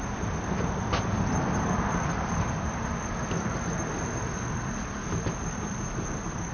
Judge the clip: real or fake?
real